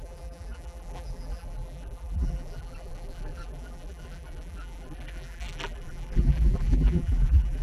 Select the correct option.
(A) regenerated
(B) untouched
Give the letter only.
A